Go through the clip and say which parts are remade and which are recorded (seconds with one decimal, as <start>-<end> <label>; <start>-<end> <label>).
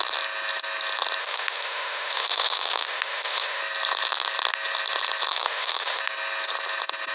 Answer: 0.0-1.2 recorded; 1.2-3.6 remade; 3.6-5.3 recorded; 5.3-6.0 remade; 6.0-7.1 recorded